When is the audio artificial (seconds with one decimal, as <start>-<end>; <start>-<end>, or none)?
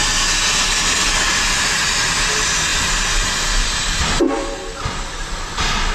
none